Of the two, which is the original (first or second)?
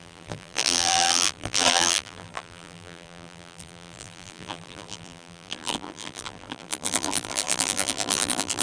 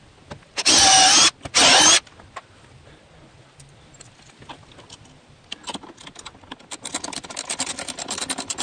second